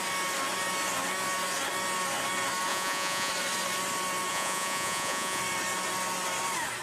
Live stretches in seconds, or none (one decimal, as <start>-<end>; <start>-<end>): 0.0-2.7; 3.3-4.3; 5.4-6.8